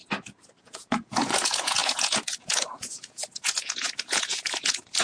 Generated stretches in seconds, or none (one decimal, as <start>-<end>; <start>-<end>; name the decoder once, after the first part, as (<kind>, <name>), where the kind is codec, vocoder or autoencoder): 0.6-5.0 (vocoder, Vocos)

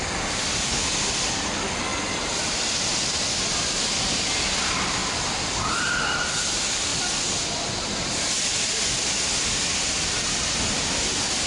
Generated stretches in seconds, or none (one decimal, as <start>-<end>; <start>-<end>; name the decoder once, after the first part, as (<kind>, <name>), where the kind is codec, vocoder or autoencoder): none

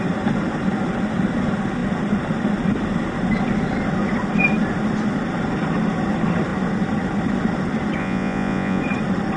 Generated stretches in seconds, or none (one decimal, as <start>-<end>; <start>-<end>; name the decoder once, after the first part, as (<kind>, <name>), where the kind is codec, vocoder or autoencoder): 8.0-8.8 (vocoder, Vocos)

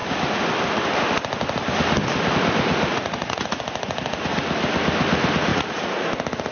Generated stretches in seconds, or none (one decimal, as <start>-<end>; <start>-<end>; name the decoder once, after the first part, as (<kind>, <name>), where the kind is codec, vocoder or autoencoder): 2.9-3.6 (vocoder, Vocos); 5.5-6.1